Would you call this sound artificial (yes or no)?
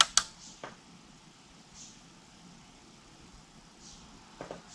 no